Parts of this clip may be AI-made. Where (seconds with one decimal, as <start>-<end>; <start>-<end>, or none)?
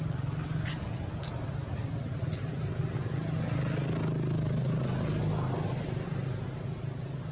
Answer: none